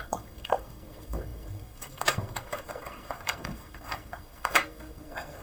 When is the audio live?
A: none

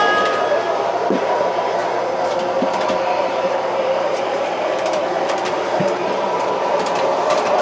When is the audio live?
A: 1.8-3.0

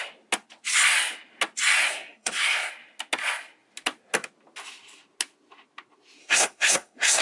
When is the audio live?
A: 0.0-1.9; 2.7-6.2